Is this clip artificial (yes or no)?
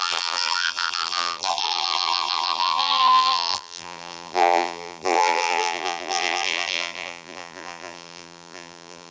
yes